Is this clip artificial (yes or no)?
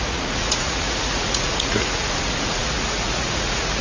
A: yes